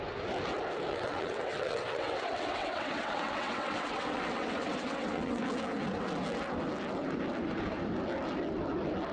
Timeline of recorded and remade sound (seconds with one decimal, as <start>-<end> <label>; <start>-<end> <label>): 0.0-0.9 recorded; 0.9-5.4 remade; 5.4-9.1 recorded